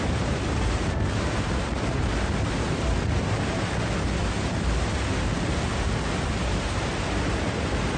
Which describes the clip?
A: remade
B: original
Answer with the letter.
A